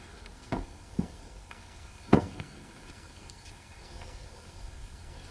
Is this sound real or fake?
fake